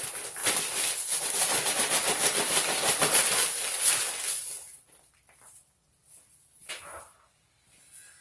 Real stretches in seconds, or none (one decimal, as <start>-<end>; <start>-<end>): 0.0-8.2